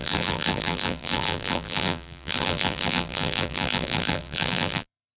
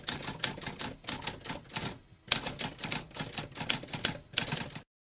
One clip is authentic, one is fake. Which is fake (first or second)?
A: first